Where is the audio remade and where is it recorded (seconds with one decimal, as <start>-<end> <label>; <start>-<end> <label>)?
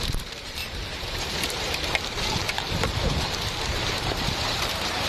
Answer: 0.0-5.1 remade